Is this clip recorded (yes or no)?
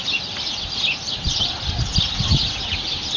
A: yes